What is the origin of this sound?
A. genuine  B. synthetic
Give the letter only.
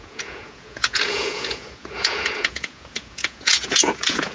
B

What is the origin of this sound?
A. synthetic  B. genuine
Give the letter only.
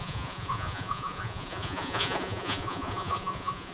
A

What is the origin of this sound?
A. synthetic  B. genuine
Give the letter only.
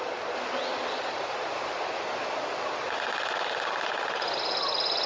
B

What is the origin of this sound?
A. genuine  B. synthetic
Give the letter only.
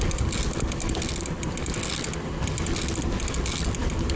A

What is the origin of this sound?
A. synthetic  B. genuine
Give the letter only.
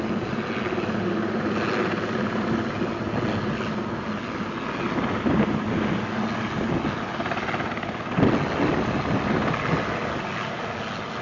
B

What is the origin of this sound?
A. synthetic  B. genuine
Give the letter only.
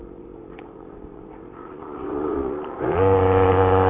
A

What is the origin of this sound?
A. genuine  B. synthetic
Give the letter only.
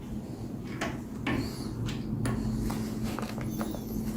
A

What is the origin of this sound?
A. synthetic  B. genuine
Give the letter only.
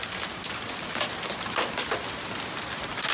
B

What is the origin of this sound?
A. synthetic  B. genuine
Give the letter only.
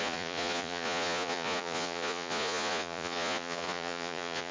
A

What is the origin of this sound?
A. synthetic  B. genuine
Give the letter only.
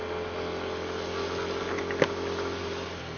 B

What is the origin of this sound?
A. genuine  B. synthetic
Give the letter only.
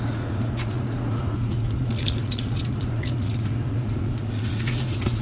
B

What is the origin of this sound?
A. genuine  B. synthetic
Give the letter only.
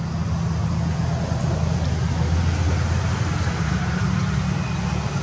A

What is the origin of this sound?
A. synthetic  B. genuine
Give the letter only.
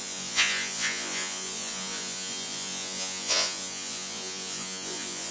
A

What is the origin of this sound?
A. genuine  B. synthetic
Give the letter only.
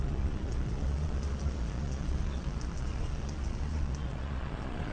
B